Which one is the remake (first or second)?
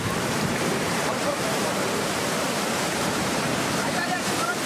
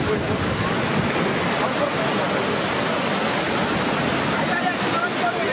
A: first